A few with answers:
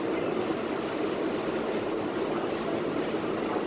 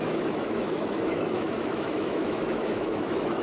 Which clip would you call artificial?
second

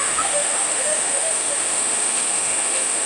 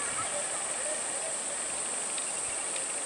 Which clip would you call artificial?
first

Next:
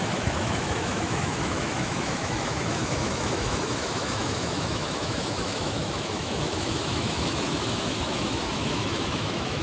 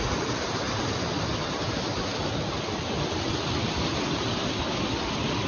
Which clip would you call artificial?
first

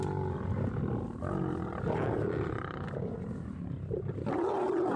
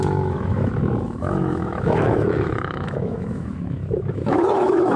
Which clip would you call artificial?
second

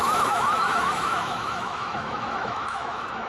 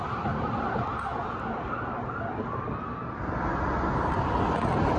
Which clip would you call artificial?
first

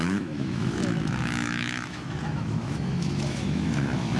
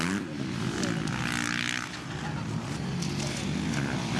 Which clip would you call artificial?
first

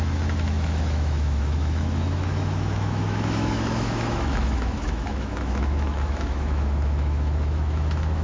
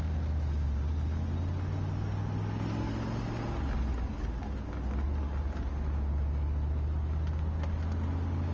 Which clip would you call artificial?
first